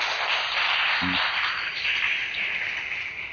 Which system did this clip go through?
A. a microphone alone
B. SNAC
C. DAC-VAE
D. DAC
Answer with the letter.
A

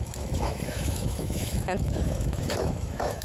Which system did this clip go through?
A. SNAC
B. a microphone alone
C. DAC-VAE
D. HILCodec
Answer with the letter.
C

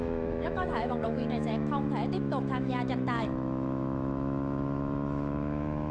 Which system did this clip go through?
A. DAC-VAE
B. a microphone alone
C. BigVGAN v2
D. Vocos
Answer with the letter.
A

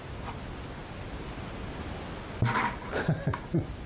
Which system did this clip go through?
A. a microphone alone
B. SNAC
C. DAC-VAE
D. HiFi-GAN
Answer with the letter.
A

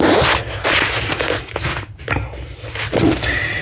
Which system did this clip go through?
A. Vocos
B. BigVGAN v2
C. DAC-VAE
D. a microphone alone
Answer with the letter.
D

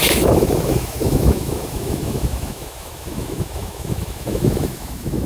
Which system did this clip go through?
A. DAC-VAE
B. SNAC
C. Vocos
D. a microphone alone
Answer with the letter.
A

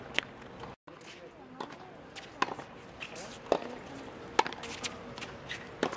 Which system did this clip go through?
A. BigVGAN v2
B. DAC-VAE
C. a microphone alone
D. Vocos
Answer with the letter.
C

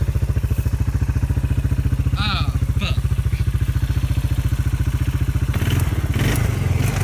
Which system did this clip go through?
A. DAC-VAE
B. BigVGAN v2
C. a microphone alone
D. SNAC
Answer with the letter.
C